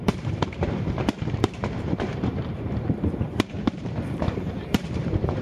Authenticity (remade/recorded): remade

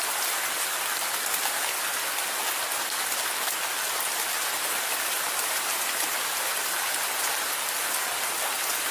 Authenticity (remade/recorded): recorded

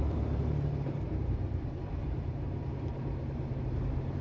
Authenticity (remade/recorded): remade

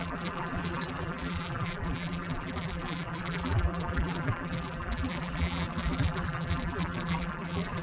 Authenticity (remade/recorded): remade